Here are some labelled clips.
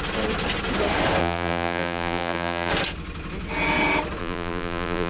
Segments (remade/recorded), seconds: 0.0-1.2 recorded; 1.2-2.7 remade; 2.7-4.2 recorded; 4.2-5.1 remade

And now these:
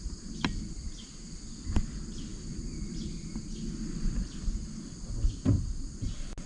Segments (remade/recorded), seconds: 0.0-6.5 recorded

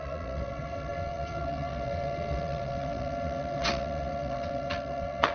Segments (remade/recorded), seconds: 0.0-5.3 remade

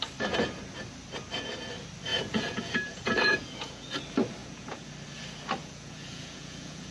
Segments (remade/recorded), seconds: 0.0-2.1 recorded; 2.1-3.9 remade; 3.9-4.4 recorded; 4.4-4.9 remade; 4.9-5.6 recorded; 5.6-6.9 remade